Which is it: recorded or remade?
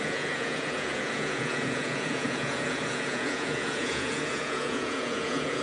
remade